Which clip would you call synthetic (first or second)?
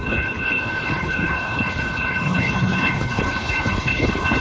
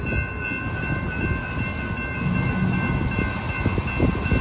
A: first